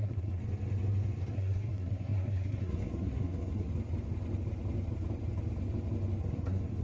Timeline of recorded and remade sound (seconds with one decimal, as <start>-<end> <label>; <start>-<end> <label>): 0.0-0.4 remade; 0.4-1.3 recorded; 1.3-3.7 remade; 3.7-6.2 recorded; 6.2-6.8 remade